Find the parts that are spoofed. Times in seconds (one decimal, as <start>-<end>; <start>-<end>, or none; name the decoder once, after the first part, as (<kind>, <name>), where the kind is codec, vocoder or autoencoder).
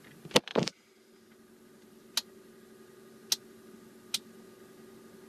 none